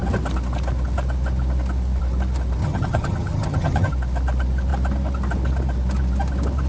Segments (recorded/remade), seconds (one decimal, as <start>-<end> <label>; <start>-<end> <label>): 0.0-2.6 recorded; 2.6-3.9 remade; 3.9-6.7 recorded